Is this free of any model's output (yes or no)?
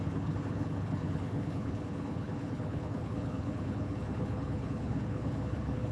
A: no